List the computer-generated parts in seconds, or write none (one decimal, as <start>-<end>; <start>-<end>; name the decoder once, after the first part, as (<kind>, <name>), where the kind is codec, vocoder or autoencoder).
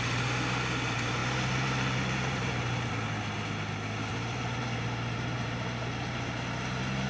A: 1.2-2.9 (vocoder, BigVGAN v2); 4.1-7.1